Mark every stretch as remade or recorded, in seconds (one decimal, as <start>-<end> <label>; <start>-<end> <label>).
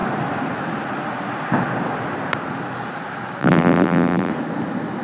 0.0-3.4 recorded; 3.4-4.3 remade; 4.3-5.0 recorded